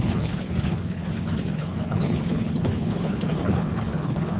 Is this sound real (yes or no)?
no